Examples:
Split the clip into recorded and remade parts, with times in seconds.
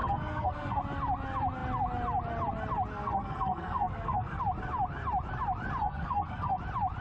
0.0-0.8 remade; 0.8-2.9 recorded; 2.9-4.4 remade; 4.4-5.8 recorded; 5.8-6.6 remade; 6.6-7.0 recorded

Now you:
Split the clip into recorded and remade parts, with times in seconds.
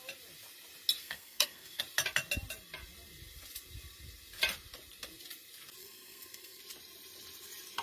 0.0-1.0 recorded; 1.0-1.8 remade; 1.8-5.8 recorded; 5.8-6.6 remade; 6.6-7.8 recorded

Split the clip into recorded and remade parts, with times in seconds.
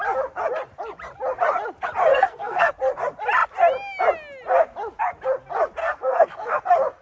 0.0-2.1 recorded; 2.1-2.7 remade; 2.7-5.8 recorded; 5.8-6.6 remade; 6.6-7.0 recorded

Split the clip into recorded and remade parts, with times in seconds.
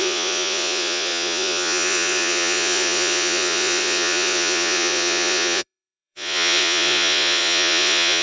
0.0-8.2 remade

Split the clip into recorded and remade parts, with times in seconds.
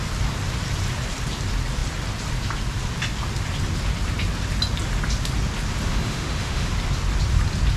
0.0-5.9 recorded; 5.9-6.7 remade; 6.7-7.8 recorded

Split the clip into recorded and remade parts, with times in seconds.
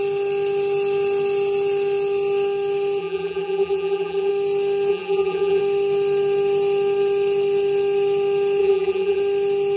0.0-3.0 recorded; 3.0-4.3 remade; 4.3-4.9 recorded; 4.9-5.6 remade; 5.6-8.6 recorded; 8.6-9.2 remade; 9.2-9.8 recorded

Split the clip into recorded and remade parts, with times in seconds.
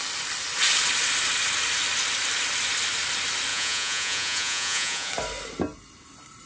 0.0-3.5 recorded; 3.5-5.1 remade; 5.1-6.5 recorded